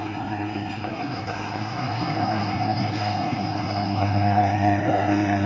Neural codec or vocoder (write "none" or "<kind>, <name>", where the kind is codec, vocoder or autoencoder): codec, SNAC